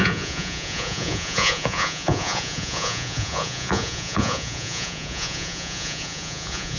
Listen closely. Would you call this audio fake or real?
fake